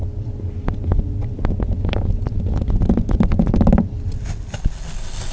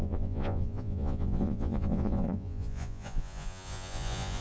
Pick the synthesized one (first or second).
second